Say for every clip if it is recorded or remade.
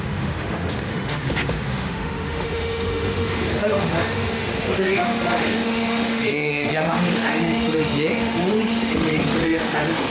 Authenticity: remade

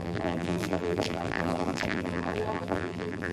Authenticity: remade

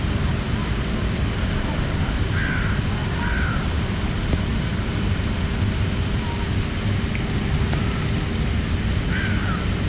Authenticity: recorded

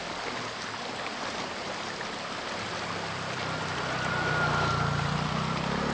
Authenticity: recorded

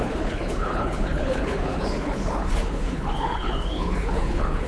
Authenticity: remade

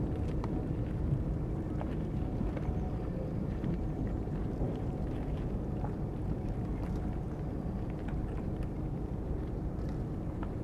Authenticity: remade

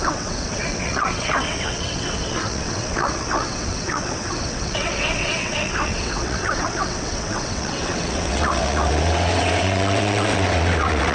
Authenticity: remade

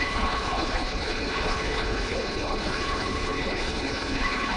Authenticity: remade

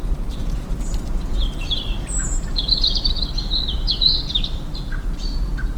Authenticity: remade